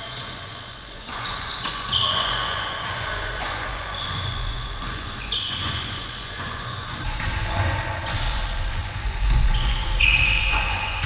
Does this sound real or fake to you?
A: fake